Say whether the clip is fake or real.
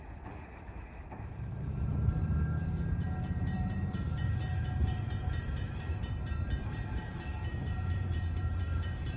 fake